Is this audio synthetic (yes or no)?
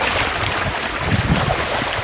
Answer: no